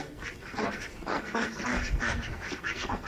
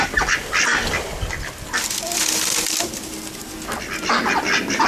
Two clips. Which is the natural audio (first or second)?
second